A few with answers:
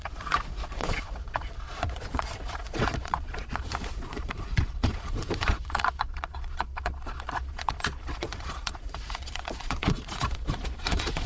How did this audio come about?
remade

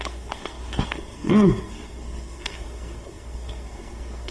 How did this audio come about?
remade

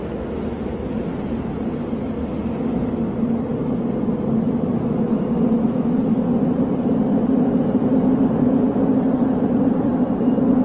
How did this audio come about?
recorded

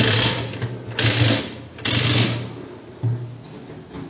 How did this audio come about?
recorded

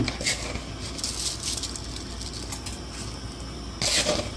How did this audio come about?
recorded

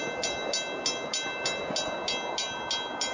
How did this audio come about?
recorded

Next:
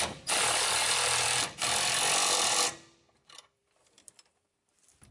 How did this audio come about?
remade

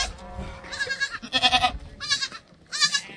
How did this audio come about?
recorded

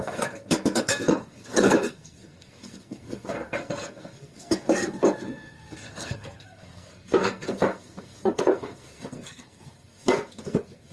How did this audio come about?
remade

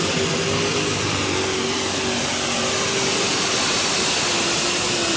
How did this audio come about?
recorded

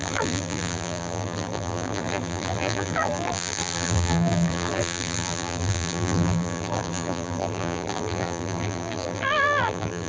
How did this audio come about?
remade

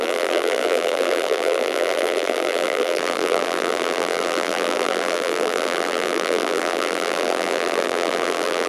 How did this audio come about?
remade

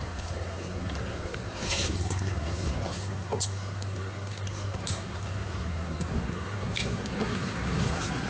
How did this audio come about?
remade